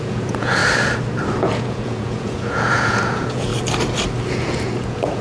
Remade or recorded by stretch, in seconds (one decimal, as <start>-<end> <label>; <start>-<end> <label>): 0.0-0.6 remade; 0.6-1.4 recorded; 1.4-3.5 remade; 3.5-4.3 recorded; 4.3-5.2 remade